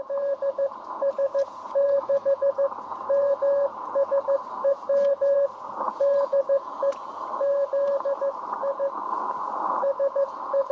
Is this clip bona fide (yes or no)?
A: no